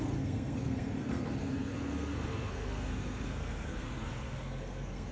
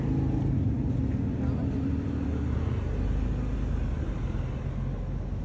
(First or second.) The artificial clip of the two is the first